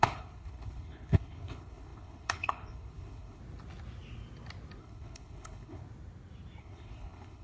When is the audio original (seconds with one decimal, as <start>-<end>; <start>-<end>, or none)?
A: 3.4-4.8; 5.8-6.6